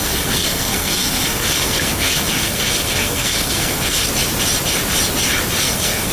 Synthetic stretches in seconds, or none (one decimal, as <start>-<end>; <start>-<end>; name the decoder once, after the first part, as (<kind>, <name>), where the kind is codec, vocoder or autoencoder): 0.0-4.0 (codec, SNAC); 5.6-6.1